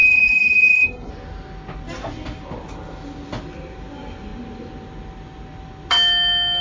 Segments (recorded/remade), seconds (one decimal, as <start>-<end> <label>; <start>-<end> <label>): 0.0-1.1 remade; 1.1-6.6 recorded